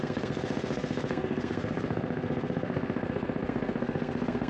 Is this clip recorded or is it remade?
remade